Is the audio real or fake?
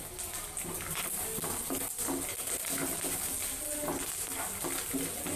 real